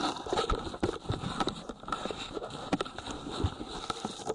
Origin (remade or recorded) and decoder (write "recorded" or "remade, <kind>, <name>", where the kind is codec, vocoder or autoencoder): recorded